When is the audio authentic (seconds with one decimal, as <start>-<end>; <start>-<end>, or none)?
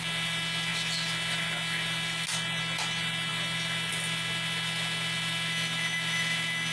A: 0.0-6.7